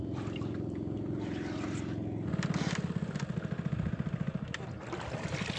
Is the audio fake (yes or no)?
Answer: no